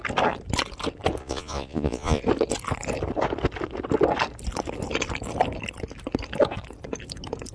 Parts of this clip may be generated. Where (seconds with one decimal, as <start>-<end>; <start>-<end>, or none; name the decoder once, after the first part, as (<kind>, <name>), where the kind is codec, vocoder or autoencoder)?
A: 1.2-2.2 (vocoder, Vocos)